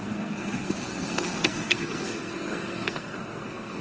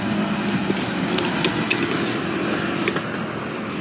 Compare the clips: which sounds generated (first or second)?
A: first